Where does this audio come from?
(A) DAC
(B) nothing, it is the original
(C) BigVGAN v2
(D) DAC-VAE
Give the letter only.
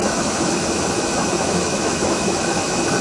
D